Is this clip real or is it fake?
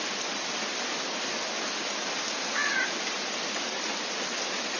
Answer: real